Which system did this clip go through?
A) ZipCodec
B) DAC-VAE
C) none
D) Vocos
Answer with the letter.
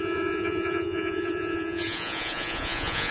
D